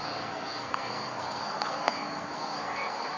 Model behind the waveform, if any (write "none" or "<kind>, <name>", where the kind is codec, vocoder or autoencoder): codec, SNAC